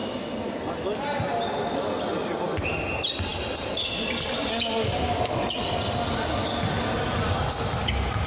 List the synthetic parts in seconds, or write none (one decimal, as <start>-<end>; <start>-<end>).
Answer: none